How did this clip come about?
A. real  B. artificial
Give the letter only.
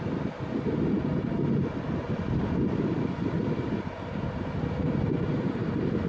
A